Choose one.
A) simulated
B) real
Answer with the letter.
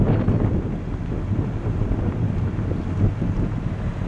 B